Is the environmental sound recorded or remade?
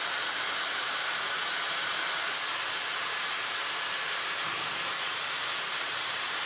remade